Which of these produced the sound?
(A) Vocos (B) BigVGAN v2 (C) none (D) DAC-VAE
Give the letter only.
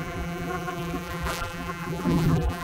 B